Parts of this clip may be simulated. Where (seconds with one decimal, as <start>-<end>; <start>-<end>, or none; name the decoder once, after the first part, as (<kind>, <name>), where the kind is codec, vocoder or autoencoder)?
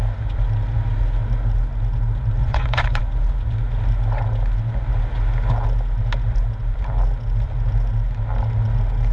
2.4-3.0 (vocoder, Vocos)